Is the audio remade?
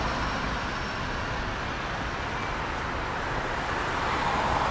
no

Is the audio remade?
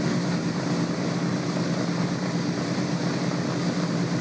no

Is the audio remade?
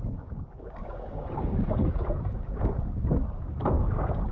yes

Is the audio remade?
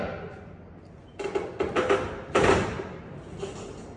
no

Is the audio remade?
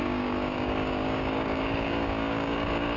yes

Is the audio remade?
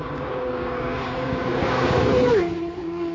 yes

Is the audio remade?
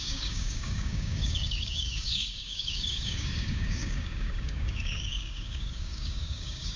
yes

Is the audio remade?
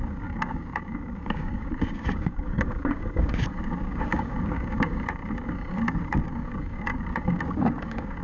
yes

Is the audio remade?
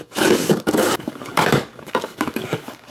yes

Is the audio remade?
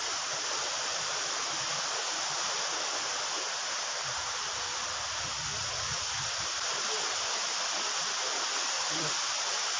no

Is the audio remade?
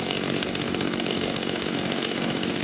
yes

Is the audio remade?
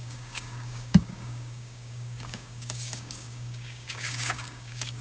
yes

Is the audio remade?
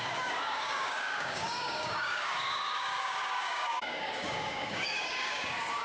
yes